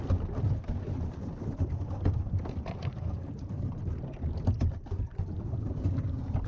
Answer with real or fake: real